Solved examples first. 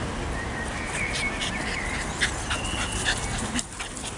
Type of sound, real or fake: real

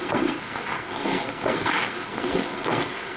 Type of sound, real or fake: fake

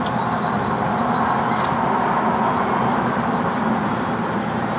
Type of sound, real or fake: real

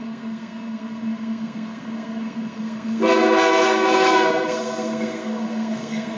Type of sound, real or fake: fake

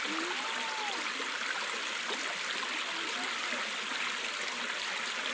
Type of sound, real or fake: real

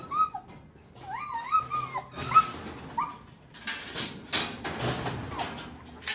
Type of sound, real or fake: real